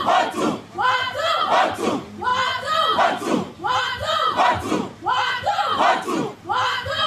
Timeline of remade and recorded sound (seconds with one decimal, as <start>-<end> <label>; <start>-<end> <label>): 0.0-7.1 recorded